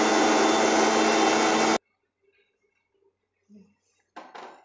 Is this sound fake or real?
real